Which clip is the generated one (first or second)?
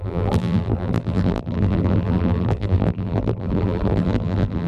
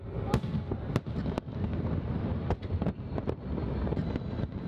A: first